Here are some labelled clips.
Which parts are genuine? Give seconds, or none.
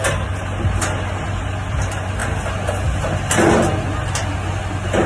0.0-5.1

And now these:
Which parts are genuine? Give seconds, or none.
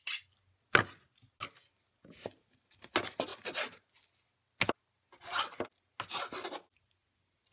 0.0-7.5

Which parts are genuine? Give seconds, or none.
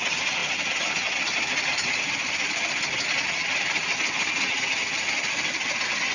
0.0-6.1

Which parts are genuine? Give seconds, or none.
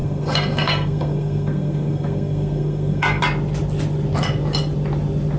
3.2-5.4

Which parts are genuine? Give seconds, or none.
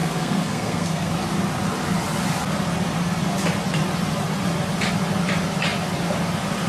1.1-6.7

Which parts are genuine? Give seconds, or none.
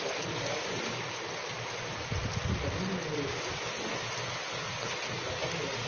0.0-5.9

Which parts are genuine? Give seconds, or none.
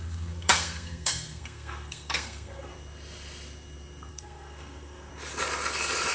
2.7-4.1; 5.1-6.1